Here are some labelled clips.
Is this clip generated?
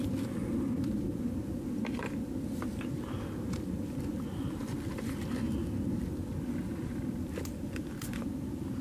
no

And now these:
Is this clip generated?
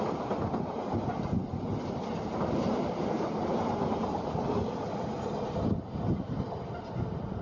no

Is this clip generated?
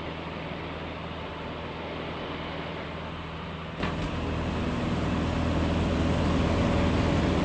no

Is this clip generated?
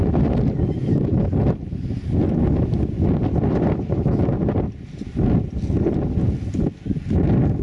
no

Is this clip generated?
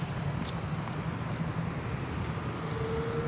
no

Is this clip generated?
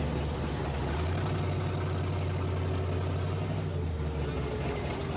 no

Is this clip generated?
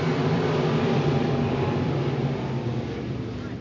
yes